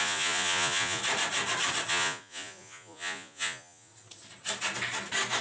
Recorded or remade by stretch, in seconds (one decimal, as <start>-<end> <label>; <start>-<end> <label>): 0.0-1.0 remade; 1.0-1.9 recorded; 1.9-3.9 remade; 3.9-5.4 recorded